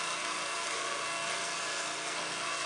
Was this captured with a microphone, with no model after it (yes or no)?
no